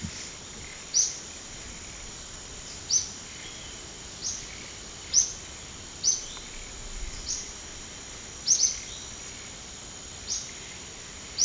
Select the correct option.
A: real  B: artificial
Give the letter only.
A